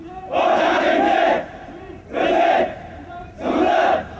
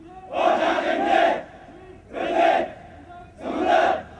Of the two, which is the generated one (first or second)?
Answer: first